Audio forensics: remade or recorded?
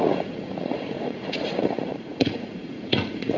remade